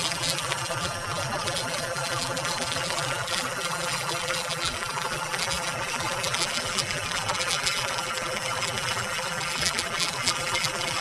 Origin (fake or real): fake